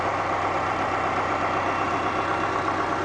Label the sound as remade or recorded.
recorded